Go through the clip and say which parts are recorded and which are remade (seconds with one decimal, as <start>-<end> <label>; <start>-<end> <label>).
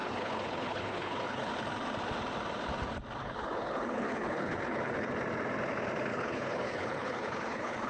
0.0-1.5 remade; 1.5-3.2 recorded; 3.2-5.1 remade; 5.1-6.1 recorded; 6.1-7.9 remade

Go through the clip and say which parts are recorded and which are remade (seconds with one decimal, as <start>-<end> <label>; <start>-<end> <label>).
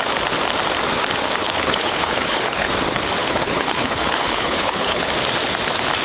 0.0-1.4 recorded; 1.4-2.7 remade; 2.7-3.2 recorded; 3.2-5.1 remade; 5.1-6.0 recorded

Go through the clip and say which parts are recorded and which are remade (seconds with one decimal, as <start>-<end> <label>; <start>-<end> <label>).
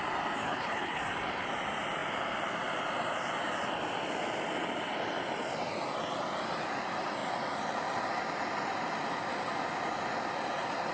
0.0-0.4 recorded; 0.4-1.0 remade; 1.0-10.9 recorded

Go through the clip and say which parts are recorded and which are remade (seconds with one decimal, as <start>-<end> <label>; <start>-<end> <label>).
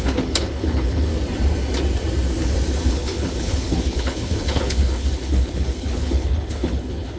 0.0-1.1 remade; 1.1-2.9 recorded; 2.9-7.2 remade